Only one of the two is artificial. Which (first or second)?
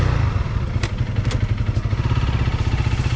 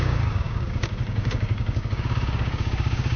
second